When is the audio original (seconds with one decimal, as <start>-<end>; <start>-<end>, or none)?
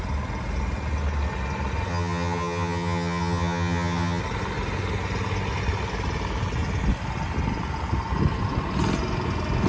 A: 0.0-1.9; 4.2-9.7